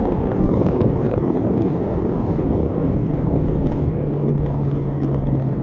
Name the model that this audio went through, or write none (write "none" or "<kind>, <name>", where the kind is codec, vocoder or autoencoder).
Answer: codec, DAC